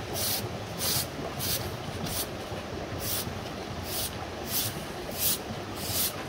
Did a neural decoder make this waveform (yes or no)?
no